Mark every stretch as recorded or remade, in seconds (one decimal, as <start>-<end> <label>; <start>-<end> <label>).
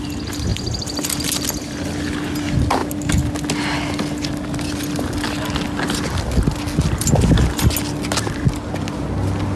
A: 0.0-9.6 recorded